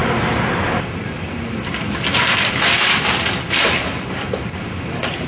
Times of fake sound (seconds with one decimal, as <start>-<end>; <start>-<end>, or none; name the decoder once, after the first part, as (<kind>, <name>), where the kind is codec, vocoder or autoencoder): none